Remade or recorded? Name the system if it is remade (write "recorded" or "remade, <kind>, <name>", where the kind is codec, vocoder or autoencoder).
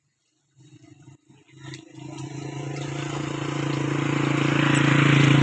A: recorded